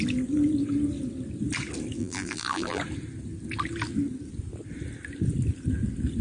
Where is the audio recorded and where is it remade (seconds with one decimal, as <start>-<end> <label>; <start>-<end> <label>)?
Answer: 0.0-2.0 recorded; 2.0-2.8 remade; 2.8-6.2 recorded